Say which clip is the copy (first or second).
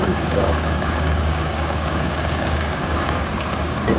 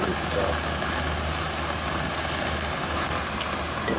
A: first